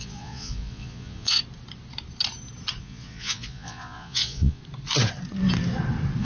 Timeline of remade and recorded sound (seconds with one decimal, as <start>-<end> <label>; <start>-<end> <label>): 0.0-1.4 remade; 1.4-2.8 recorded; 2.8-4.6 remade; 4.6-6.2 recorded